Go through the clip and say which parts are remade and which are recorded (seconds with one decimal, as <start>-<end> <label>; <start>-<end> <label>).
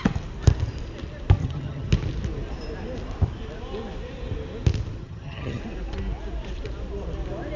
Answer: 0.0-1.4 recorded; 1.4-1.9 remade; 1.9-5.0 recorded; 5.0-5.6 remade; 5.6-7.6 recorded